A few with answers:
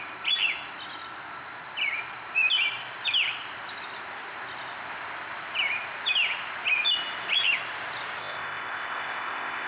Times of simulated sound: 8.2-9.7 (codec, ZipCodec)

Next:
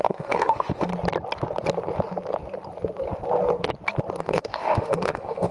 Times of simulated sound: 0.0-0.9 (autoencoder, DAC-VAE); 4.2-5.5